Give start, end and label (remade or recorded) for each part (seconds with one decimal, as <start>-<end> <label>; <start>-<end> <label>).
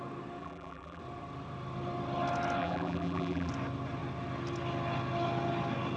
0.0-0.4 recorded; 0.4-1.0 remade; 1.0-2.6 recorded; 2.6-3.5 remade; 3.5-6.0 recorded